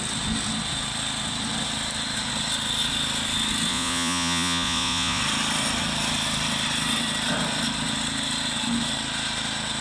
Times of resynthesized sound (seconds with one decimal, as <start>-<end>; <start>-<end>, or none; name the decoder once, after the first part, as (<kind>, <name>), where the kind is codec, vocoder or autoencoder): 3.7-5.2 (vocoder, Vocos)